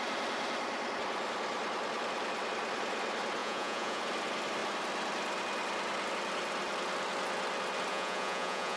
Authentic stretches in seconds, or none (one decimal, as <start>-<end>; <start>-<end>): 0.0-3.4; 4.0-7.9